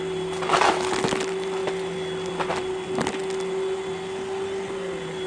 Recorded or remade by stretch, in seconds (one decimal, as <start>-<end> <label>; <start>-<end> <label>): 0.0-5.3 recorded